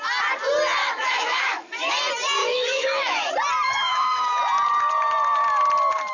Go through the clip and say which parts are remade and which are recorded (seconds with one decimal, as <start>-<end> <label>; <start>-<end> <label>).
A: 0.0-0.8 recorded; 0.8-1.9 remade; 1.9-2.4 recorded; 2.4-3.3 remade; 3.3-3.7 recorded; 3.7-4.4 remade; 4.4-6.1 recorded